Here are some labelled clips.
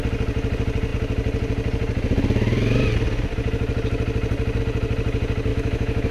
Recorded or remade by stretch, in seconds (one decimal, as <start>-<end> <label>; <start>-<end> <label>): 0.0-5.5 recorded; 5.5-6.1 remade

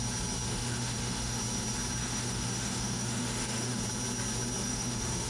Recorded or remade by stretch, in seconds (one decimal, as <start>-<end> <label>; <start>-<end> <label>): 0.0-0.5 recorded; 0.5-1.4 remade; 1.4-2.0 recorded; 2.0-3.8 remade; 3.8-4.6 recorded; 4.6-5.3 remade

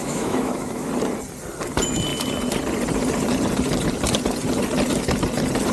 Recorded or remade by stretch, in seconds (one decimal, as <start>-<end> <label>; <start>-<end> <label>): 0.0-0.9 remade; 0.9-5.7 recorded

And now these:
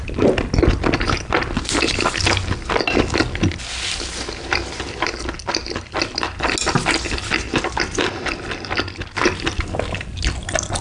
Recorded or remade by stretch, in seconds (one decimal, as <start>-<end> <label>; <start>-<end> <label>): 0.0-10.8 recorded